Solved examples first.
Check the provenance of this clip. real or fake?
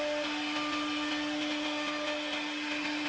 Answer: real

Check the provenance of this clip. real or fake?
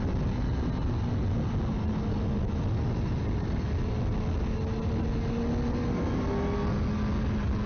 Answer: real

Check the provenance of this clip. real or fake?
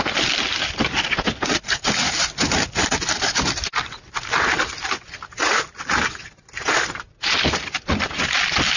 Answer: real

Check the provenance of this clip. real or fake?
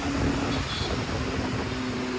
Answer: real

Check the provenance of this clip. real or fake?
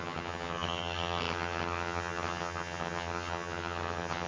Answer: fake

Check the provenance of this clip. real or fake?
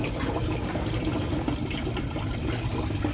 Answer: real